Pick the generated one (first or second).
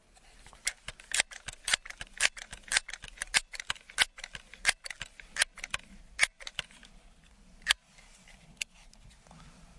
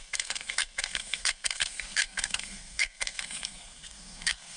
second